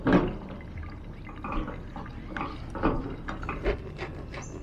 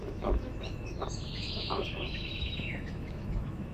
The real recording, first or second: first